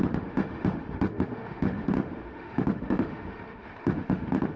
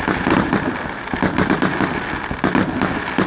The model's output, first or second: first